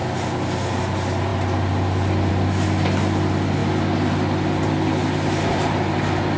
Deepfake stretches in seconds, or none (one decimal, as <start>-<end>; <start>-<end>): none